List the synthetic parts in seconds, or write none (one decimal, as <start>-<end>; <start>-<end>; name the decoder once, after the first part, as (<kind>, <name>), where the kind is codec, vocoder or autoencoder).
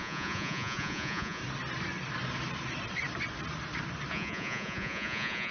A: 0.0-1.4 (vocoder, Vocos); 4.1-5.5